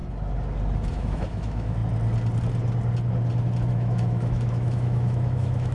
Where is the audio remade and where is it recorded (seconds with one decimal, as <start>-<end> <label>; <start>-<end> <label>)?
0.0-0.9 recorded; 0.9-1.8 remade; 1.8-3.7 recorded; 3.7-5.7 remade